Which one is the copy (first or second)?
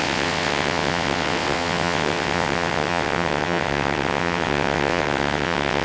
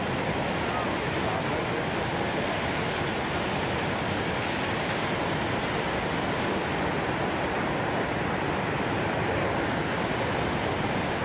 first